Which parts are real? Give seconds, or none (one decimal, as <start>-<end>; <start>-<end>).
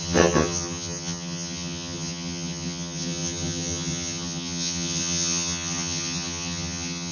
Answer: none